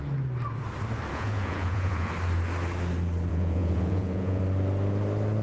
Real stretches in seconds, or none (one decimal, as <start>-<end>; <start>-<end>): 0.0-1.1; 2.1-3.3; 4.4-5.4